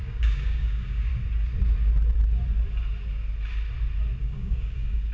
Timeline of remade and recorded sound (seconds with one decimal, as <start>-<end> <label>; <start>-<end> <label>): 0.0-1.1 remade; 1.1-4.2 recorded; 4.2-5.1 remade